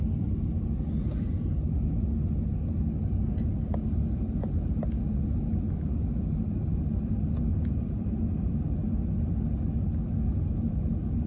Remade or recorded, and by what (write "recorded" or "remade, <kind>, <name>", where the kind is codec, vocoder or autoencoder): recorded